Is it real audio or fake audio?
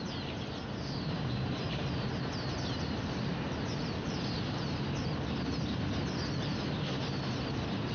real